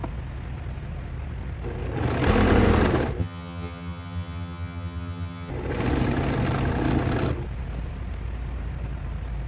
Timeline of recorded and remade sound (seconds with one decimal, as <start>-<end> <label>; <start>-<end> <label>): 0.0-3.2 recorded; 3.2-5.5 remade; 5.5-9.5 recorded